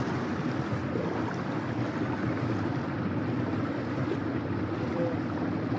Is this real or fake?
real